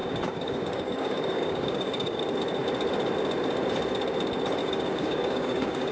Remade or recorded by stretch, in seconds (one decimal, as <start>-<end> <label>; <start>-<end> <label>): 0.0-2.2 remade; 2.2-4.6 recorded; 4.6-5.9 remade